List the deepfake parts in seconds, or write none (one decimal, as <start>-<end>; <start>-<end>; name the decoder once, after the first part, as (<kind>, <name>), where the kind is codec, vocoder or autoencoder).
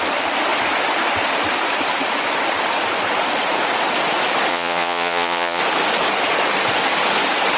4.5-5.6 (vocoder, Vocos)